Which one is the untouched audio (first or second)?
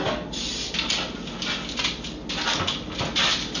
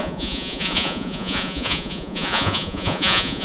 first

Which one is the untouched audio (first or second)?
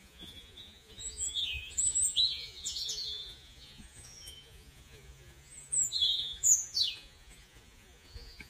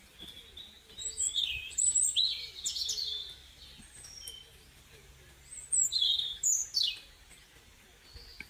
second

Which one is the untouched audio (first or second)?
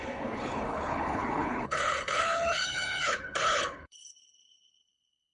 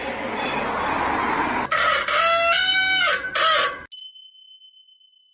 second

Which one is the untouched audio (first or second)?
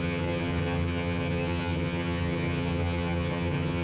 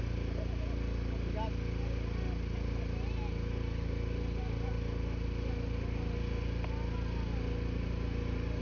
second